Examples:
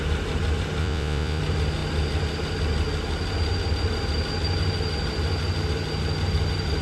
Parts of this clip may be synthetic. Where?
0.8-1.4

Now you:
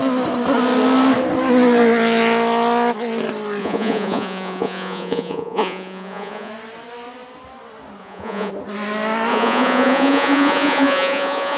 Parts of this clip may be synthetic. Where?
3.6-6.5; 8.0-8.5; 9.3-11.6

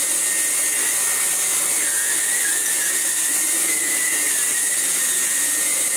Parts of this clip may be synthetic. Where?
none